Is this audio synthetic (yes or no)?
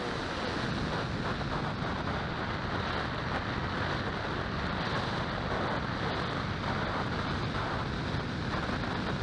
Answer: no